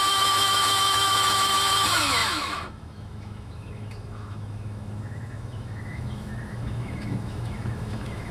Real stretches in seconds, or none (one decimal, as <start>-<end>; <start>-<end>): none